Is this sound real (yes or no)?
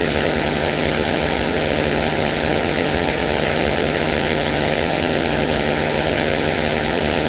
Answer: no